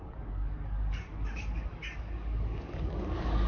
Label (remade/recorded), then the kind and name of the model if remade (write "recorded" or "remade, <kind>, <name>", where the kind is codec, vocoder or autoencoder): remade, codec, DAC